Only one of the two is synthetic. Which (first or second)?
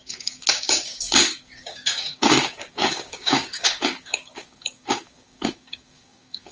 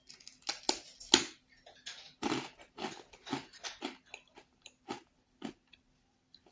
first